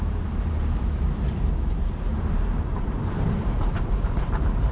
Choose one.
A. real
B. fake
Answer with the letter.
B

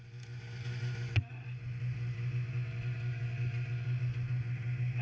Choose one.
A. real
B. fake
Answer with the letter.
A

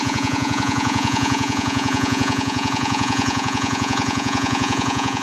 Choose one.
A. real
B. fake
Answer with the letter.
B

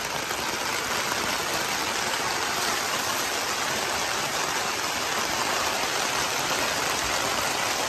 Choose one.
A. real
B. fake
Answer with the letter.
A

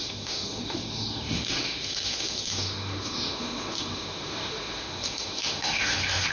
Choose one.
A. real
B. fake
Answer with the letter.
B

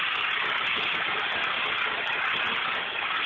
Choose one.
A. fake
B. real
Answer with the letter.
B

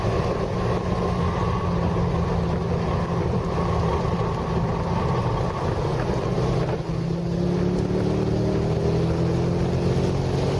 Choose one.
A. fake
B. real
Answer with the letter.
B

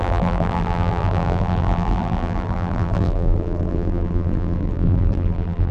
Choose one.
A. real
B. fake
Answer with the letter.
B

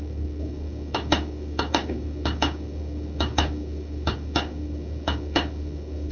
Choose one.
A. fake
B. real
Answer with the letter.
A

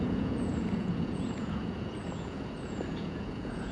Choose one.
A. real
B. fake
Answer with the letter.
B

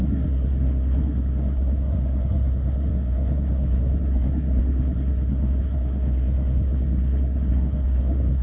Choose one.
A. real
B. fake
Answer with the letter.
B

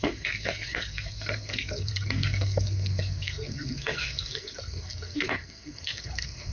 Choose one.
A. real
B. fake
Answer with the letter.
B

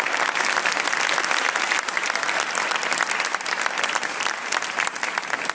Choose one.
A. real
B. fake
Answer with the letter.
A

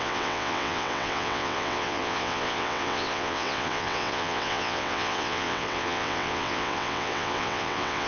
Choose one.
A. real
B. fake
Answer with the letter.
B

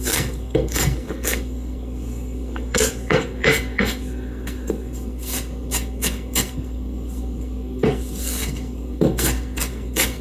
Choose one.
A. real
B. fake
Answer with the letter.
B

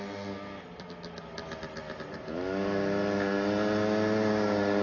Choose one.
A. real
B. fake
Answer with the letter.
A